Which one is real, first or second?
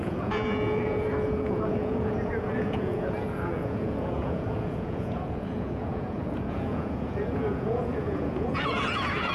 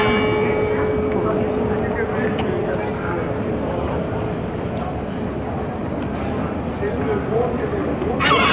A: second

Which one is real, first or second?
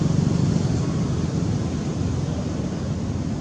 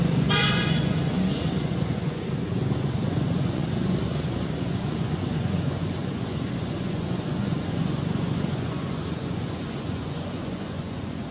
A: first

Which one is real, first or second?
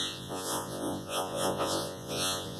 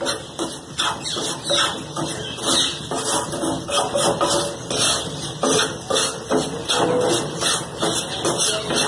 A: second